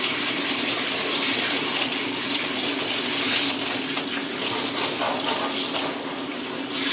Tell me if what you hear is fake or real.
real